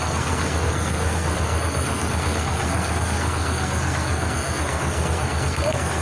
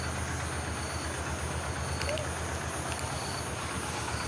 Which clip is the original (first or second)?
second